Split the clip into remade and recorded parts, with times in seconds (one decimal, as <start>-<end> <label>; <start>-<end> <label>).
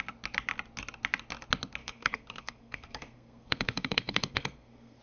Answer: 0.0-1.8 recorded; 1.8-5.0 remade